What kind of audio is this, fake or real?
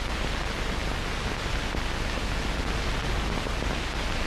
real